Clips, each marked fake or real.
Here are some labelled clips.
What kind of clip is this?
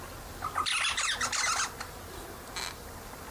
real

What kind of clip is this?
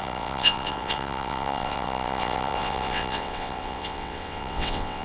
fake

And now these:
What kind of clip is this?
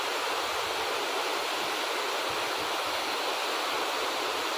real